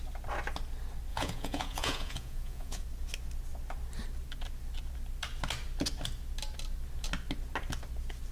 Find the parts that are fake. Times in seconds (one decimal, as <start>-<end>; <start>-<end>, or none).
1.1-2.8